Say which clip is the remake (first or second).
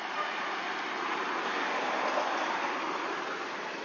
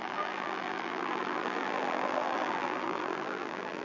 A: second